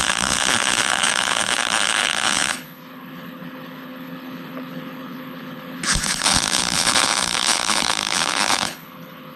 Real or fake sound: fake